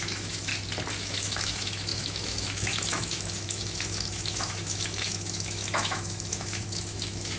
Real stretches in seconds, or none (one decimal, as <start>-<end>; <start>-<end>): 0.5-1.0